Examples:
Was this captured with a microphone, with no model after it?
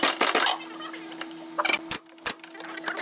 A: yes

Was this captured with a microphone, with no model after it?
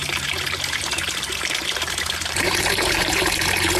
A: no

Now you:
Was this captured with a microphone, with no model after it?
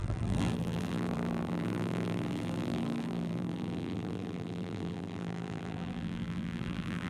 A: no